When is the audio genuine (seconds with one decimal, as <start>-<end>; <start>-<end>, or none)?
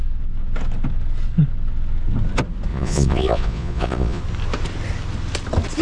0.0-2.7; 4.2-5.8